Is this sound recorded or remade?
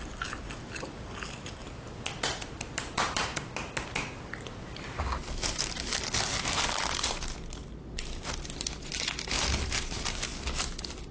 recorded